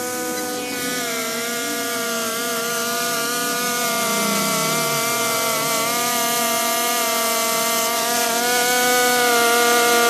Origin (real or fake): real